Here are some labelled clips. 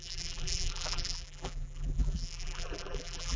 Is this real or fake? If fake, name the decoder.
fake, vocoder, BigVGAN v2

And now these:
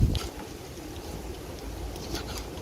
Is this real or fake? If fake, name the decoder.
fake, vocoder, BigVGAN v2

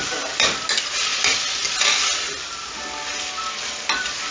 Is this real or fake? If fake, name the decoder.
real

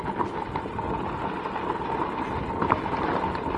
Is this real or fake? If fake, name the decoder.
real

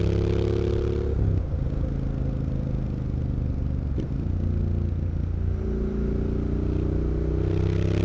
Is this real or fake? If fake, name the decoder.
real